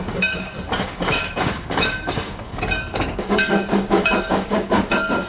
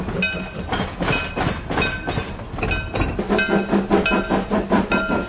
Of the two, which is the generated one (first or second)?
first